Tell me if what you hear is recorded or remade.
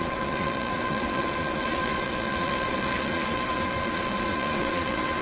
remade